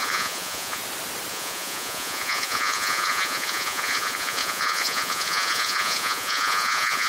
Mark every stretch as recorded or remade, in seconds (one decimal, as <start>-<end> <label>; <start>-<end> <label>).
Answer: 0.0-0.8 remade; 0.8-1.3 recorded; 1.3-7.1 remade